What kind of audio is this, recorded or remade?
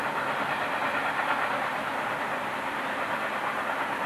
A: recorded